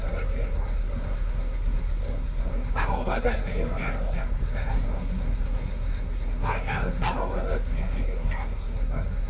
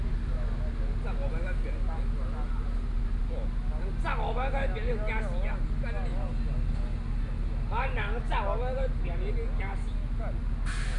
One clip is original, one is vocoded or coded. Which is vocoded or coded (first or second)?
first